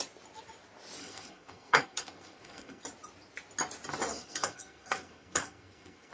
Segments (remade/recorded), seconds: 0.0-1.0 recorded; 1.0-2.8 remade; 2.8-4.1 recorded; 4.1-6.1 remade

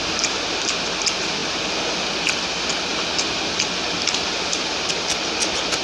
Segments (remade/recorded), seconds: 0.0-5.8 recorded

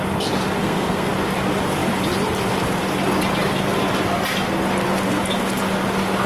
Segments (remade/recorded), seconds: 0.0-0.6 recorded; 0.6-1.1 remade; 1.1-6.3 recorded

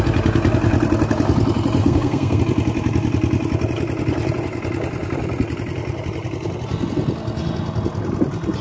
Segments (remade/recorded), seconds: 0.0-1.8 recorded; 1.8-2.4 remade; 2.4-8.6 recorded